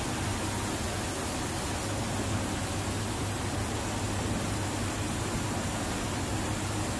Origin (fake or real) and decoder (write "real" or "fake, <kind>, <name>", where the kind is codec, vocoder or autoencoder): real